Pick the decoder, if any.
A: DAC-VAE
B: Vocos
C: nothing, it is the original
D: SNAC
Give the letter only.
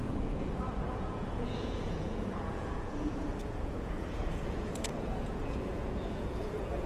B